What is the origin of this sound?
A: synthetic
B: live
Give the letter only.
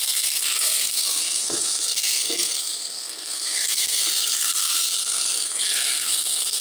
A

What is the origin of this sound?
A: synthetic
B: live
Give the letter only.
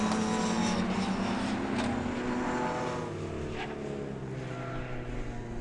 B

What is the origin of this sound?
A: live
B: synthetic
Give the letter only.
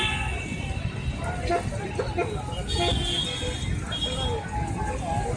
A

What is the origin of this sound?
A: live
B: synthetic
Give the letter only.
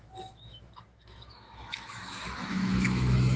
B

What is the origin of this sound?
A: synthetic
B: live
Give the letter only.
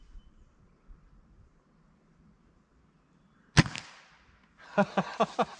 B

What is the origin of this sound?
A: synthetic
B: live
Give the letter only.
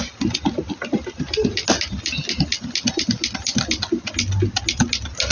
B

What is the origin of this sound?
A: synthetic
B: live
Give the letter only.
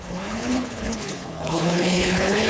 A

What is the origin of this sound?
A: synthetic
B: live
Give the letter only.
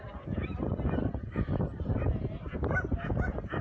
B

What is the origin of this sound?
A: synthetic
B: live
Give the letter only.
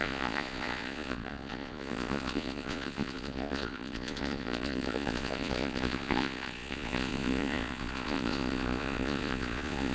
A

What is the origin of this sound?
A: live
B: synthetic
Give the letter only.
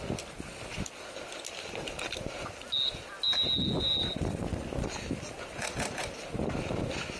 A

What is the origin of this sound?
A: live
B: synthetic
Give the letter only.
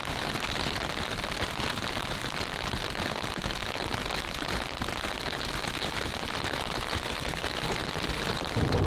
A